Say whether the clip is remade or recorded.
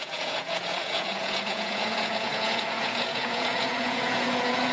remade